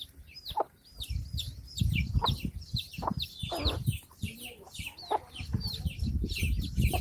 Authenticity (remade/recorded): recorded